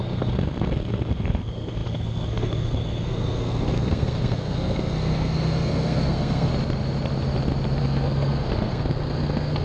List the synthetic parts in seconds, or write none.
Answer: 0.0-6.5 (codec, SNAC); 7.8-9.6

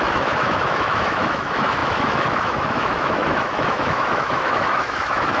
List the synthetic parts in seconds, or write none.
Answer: 0.0-5.4 (autoencoder, DAC-VAE)

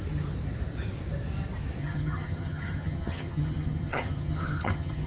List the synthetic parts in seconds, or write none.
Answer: 1.8-5.1 (vocoder, HiFi-GAN)